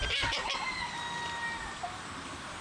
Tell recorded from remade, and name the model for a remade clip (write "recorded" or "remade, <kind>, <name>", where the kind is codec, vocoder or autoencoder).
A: recorded